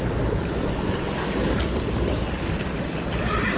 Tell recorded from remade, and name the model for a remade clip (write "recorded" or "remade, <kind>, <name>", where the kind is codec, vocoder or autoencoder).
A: recorded